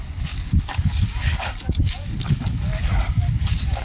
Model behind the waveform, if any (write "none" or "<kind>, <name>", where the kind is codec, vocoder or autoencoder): codec, DAC